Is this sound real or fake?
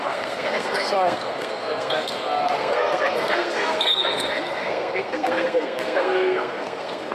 fake